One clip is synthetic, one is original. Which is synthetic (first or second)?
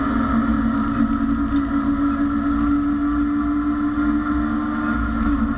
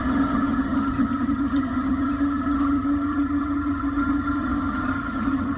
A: second